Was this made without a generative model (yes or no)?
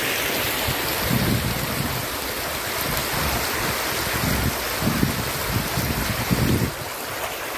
yes